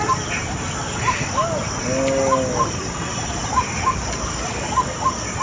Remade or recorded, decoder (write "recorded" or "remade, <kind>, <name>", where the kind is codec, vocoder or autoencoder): recorded